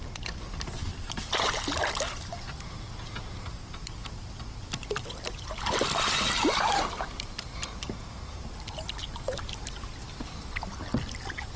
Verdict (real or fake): real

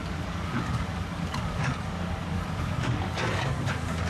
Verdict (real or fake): fake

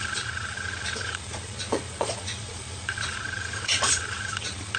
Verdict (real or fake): fake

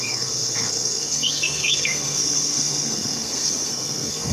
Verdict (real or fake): fake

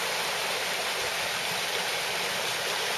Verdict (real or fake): real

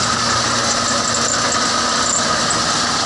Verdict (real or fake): real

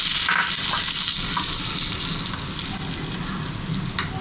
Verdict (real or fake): real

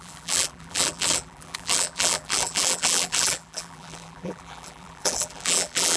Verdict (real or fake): fake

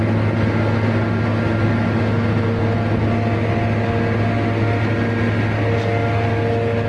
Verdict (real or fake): real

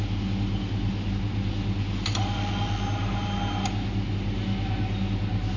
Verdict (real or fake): real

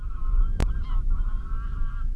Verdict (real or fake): real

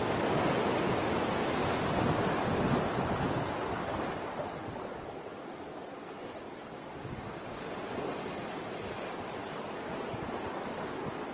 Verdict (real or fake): fake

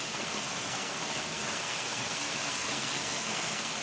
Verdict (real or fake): fake